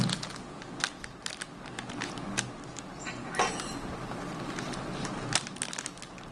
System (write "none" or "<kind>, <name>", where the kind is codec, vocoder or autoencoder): none